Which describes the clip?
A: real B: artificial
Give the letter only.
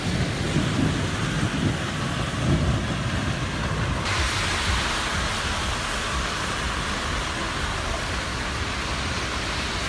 A